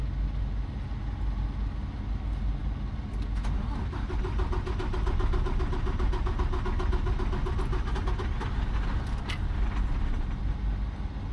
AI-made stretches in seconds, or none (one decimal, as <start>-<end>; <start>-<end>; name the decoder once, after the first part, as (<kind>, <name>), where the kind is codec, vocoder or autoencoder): none